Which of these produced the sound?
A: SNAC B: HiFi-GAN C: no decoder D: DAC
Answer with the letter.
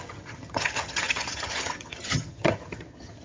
B